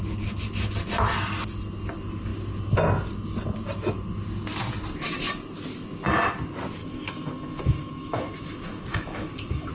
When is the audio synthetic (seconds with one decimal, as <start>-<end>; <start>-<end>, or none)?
6.8-9.7